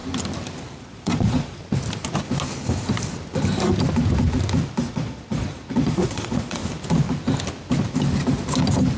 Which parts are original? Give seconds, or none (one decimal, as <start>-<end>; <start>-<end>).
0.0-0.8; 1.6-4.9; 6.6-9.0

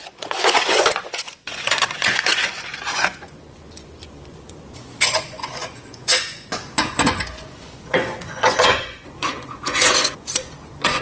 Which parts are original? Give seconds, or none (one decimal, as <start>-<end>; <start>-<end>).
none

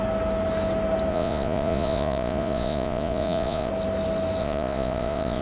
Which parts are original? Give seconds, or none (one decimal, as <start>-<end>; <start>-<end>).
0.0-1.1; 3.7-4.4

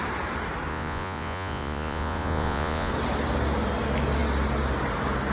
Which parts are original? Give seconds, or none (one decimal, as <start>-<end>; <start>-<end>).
0.0-0.7; 2.9-5.3

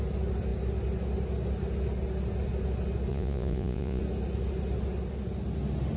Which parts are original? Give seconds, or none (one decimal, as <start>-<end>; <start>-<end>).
0.0-3.1; 4.0-6.0

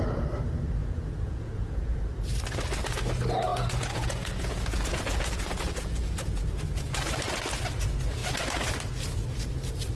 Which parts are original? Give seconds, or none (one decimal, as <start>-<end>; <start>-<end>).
0.0-0.8; 2.1-3.5; 6.6-9.9

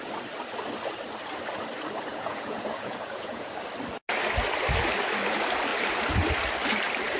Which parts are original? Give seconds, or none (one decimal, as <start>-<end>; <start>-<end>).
0.0-2.1; 3.5-7.2

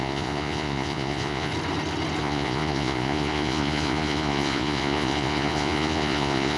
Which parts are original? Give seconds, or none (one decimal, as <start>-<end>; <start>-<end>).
1.5-2.2